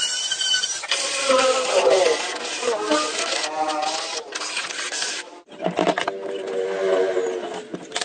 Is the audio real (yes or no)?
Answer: yes